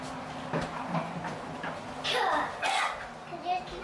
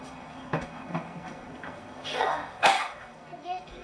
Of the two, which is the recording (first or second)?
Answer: first